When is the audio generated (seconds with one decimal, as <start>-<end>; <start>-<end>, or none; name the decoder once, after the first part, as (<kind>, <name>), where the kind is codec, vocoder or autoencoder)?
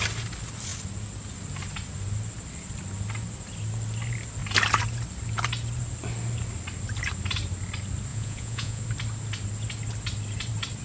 8.1-8.8 (vocoder, Vocos)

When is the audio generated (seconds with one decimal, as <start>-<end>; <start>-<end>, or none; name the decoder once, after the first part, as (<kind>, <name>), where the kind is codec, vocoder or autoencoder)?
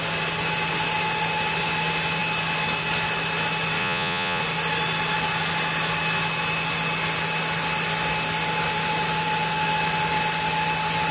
3.8-4.4 (vocoder, Vocos)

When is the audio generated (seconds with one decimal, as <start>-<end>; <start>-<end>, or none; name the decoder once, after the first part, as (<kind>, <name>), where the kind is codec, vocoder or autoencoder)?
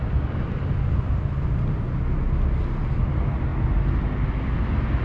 none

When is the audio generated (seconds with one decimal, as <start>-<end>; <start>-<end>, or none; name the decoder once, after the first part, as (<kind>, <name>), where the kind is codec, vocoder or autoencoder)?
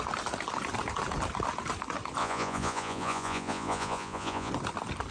2.2-4.5 (vocoder, Vocos)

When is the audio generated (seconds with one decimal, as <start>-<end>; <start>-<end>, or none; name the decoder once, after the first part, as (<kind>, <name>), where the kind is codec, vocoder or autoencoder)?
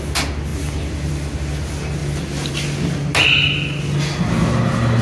none